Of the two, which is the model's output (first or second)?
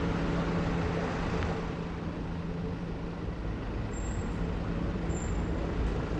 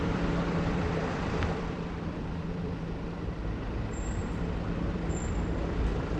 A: second